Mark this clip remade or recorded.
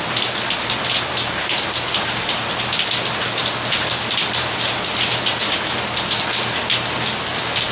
recorded